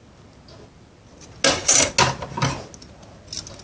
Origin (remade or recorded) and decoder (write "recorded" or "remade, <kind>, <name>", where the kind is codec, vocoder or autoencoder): recorded